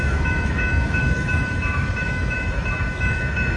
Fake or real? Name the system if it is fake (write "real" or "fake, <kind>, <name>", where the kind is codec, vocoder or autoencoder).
fake, autoencoder, DAC-VAE